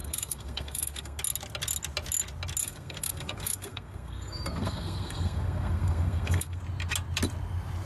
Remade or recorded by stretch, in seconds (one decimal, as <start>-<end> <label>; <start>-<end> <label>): 0.0-1.2 remade; 1.2-2.6 recorded; 2.6-6.6 remade; 6.6-7.9 recorded